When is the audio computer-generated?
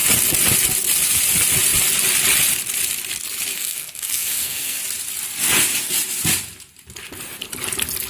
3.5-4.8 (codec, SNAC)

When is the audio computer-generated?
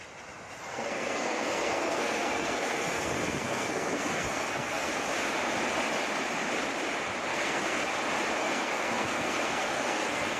0.6-4.9 (codec, SNAC); 7.3-7.9; 8.4-10.4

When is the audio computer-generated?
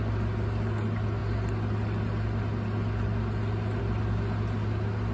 none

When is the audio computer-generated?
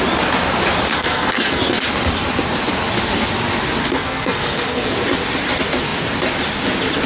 0.9-1.6 (codec, SNAC); 3.8-4.9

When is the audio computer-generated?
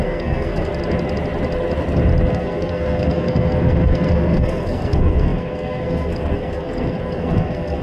0.0-0.7 (codec, SNAC); 2.3-7.8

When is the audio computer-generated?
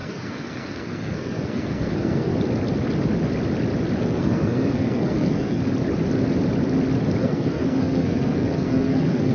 0.0-2.3 (codec, SNAC); 4.0-5.6; 7.2-9.3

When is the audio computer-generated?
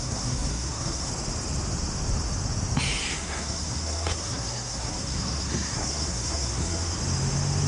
0.0-1.1 (codec, SNAC); 3.0-7.0